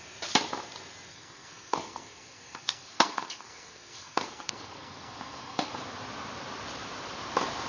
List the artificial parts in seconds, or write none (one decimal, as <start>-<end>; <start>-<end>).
1.1-5.7